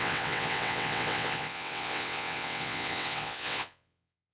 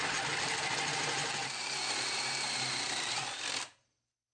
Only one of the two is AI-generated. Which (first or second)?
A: first